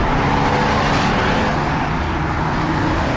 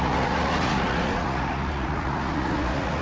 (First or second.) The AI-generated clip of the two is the second